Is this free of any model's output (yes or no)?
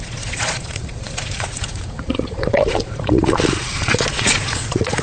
no